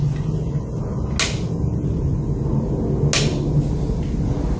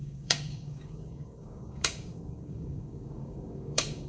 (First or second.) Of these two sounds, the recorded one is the first